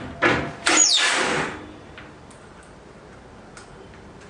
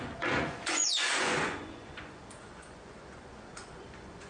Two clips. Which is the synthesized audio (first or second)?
second